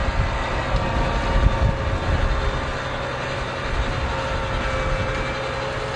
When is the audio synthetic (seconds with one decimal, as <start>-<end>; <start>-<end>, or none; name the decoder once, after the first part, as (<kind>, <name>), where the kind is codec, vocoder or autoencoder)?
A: none